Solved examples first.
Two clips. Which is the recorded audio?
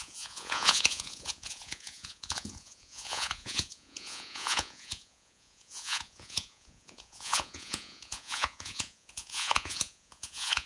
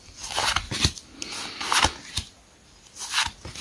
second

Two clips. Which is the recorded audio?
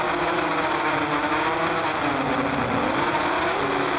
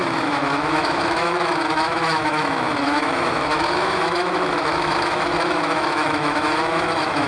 first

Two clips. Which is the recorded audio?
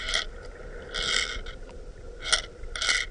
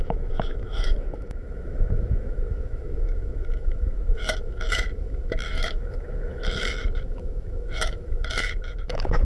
first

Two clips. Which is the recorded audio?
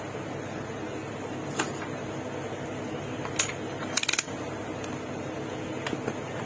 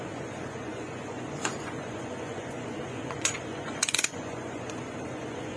first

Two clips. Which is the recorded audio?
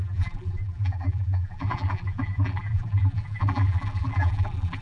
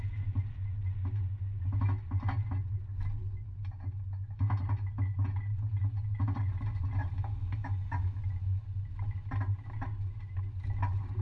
second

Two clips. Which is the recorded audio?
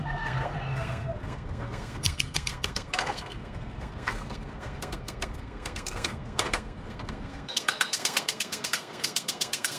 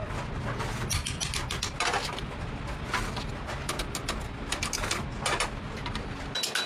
second